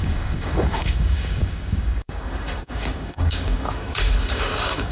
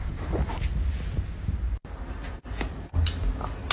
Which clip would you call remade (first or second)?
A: first